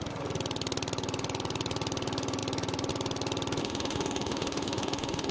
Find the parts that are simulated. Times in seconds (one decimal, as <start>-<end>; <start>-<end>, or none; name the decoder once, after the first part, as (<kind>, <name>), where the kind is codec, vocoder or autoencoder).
3.6-5.3 (autoencoder, DAC-VAE)